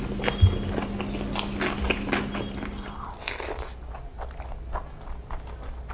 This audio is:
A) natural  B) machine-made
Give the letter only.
A